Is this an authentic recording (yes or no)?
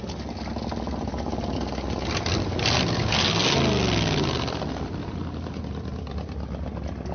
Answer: yes